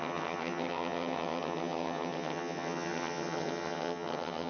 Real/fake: fake